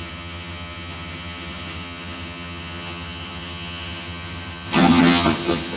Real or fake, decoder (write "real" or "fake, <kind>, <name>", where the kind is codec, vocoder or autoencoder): fake, vocoder, HiFi-GAN